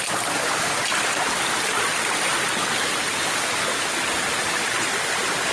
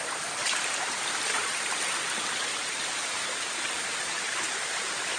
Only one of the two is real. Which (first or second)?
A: first